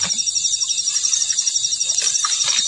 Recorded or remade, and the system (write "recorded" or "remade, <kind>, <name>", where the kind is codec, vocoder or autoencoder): recorded